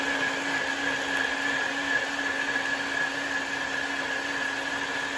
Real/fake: real